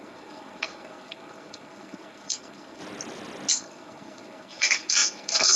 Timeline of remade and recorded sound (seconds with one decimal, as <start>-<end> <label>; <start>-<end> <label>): 0.0-2.8 remade; 2.8-3.5 recorded; 3.5-5.6 remade